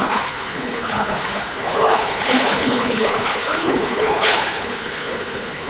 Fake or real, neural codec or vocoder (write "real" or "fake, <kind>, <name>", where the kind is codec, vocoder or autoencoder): fake, codec, HILCodec